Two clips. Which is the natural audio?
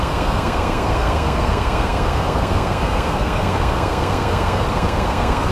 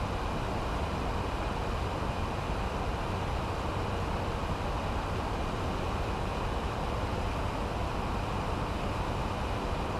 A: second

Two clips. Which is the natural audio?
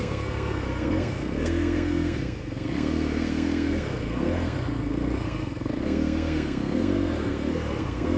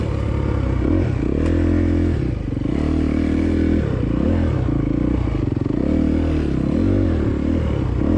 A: second